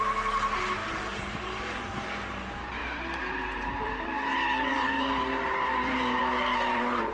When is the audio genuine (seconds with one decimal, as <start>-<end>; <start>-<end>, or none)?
0.0-0.8; 1.8-2.8